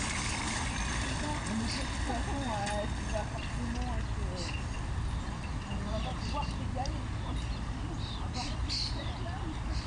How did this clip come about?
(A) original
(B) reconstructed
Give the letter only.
A